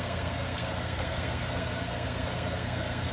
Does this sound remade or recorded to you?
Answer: remade